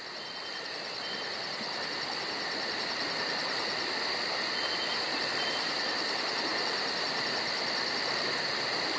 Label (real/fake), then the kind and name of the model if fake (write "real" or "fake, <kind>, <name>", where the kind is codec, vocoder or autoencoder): real